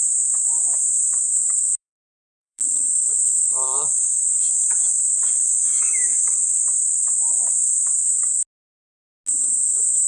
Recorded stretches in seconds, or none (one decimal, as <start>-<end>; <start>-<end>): 0.0-1.7; 4.6-5.4; 8.4-10.1